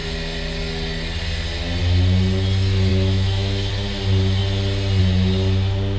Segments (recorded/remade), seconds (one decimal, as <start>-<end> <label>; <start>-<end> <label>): 0.0-2.9 recorded; 2.9-3.7 remade; 3.7-6.0 recorded